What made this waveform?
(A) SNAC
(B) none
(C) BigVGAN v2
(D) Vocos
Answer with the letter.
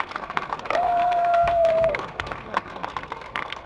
A